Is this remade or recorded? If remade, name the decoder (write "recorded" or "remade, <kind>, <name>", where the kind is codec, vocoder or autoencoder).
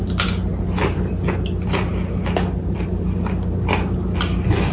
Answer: recorded